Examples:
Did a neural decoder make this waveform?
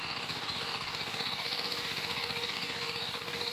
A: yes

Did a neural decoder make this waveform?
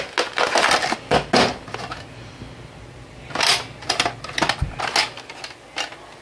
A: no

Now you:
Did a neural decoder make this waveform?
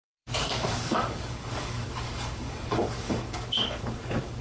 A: yes